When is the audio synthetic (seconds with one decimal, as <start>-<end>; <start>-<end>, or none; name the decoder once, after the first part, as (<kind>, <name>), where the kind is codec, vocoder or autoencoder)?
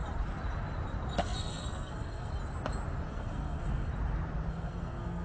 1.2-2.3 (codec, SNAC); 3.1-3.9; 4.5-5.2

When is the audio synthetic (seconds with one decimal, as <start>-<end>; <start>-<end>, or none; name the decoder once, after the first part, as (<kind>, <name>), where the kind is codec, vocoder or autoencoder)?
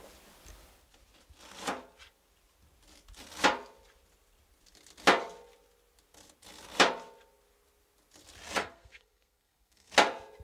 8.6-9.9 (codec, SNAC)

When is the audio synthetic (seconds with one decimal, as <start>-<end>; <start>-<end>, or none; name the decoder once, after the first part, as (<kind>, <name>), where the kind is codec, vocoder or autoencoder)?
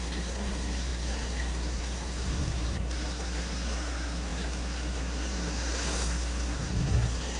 0.0-7.4 (codec, SNAC)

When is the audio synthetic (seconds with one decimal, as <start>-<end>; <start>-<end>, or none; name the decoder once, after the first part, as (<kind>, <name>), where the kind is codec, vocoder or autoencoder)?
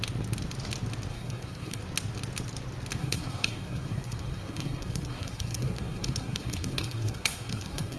1.1-1.8 (codec, SNAC); 3.0-8.0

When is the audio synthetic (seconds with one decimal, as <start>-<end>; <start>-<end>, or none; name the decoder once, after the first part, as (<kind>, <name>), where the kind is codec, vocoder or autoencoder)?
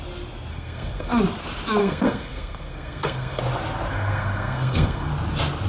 0.5-1.2 (codec, SNAC); 1.8-3.4; 3.9-5.1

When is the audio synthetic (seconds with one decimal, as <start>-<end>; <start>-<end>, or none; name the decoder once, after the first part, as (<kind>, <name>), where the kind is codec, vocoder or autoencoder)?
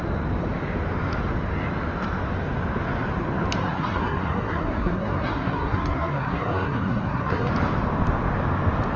3.6-7.5 (codec, SNAC)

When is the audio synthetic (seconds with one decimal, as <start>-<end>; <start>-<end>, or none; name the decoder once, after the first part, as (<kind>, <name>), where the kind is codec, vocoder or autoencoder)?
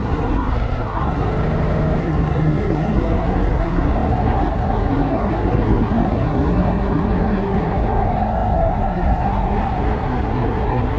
0.0-1.3 (codec, SNAC); 2.0-11.0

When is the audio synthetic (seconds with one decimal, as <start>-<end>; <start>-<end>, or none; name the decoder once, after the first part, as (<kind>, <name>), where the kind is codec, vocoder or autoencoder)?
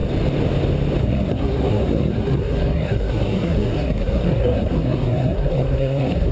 1.0-6.3 (codec, SNAC)